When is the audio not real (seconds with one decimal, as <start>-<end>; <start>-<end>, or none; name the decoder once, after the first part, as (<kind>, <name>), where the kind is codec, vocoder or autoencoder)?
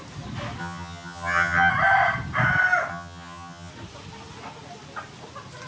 0.6-1.7 (vocoder, HiFi-GAN); 2.9-3.7